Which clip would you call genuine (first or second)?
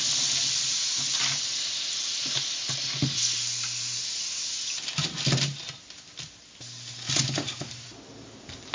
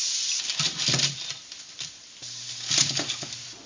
first